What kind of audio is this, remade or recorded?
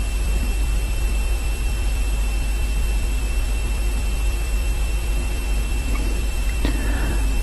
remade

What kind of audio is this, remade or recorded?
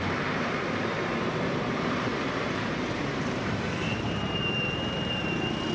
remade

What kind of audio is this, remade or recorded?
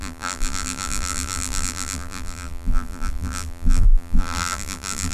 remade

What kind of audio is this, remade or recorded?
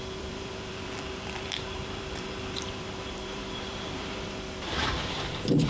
remade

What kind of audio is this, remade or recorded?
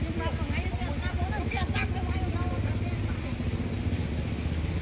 recorded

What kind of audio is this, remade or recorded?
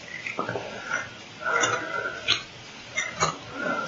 recorded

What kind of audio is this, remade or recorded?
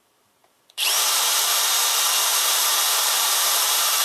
remade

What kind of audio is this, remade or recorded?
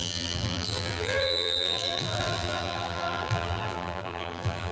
remade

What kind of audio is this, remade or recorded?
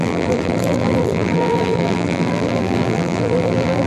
remade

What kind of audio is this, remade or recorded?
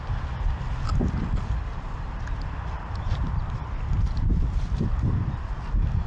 recorded